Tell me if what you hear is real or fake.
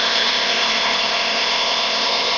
fake